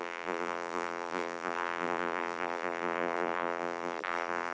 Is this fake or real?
fake